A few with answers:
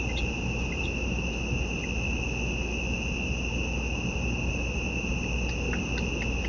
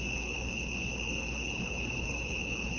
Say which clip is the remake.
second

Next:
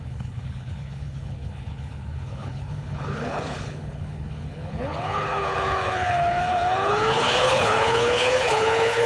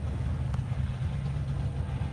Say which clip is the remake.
first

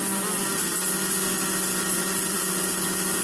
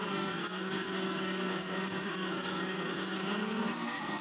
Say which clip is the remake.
second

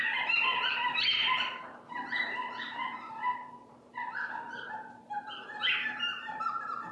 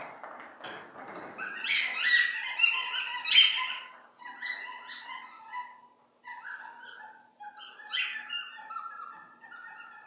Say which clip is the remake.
first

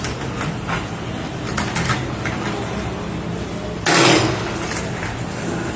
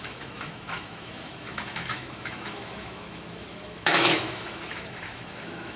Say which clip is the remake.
second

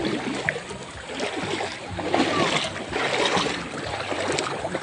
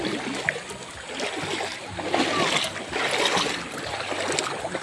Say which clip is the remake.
first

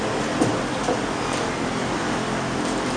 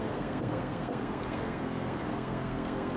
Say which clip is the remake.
second